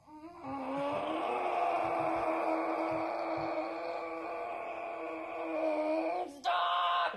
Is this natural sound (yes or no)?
yes